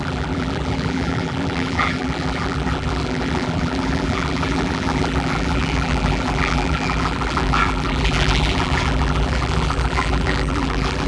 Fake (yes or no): yes